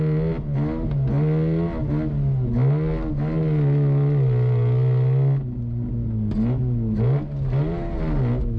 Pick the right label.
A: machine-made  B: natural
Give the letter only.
B